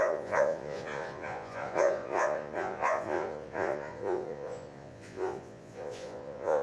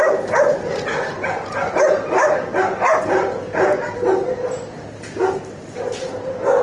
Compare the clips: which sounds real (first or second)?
second